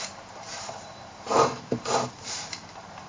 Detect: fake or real fake